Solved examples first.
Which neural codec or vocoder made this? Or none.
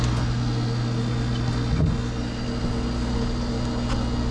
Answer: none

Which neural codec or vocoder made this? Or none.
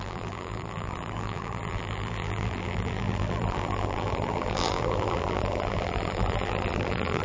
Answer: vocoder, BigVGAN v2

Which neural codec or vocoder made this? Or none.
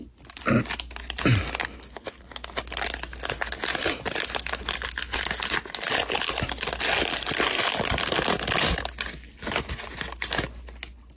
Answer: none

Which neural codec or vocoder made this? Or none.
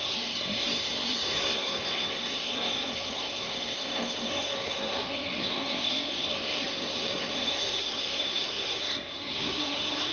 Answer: codec, SNAC